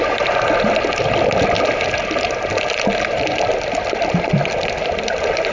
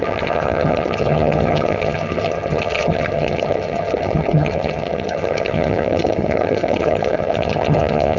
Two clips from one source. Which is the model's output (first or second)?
second